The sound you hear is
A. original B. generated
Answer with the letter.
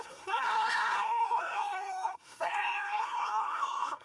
B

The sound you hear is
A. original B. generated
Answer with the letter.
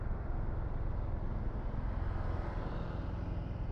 A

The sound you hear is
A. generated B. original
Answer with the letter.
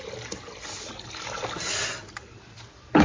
B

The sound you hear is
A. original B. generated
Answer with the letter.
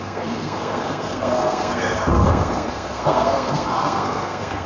B